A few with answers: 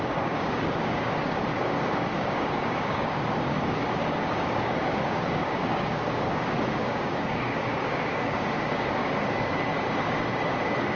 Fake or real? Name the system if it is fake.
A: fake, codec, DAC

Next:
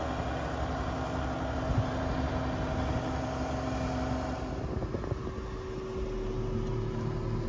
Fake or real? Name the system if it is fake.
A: real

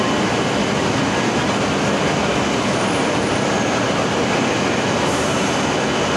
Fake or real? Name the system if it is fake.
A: real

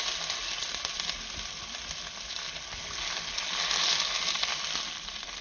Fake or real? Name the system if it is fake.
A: real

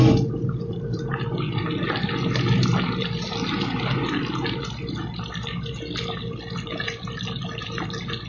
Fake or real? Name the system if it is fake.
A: real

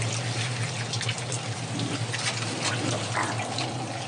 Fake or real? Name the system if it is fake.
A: real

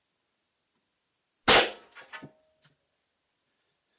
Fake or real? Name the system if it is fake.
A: real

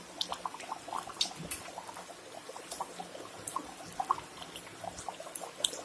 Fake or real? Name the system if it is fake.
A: real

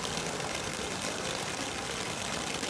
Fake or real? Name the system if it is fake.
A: real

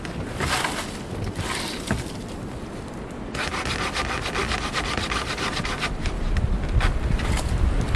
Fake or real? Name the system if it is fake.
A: real